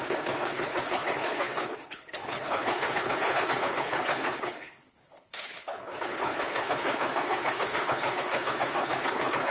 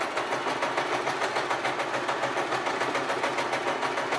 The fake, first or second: first